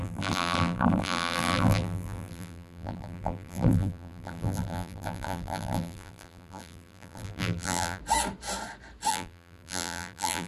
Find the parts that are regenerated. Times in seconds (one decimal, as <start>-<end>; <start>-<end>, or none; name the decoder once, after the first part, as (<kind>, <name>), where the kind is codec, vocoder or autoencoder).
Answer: 0.0-8.0 (vocoder, BigVGAN v2); 9.1-10.5